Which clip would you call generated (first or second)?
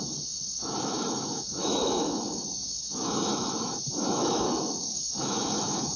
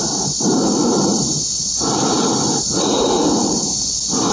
first